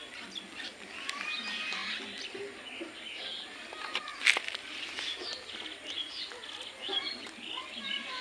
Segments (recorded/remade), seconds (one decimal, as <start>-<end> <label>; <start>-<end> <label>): 0.0-8.2 recorded